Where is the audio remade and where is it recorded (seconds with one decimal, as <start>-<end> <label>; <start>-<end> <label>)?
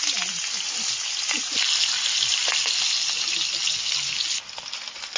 0.0-5.2 recorded